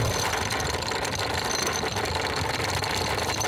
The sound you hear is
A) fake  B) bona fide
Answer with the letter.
B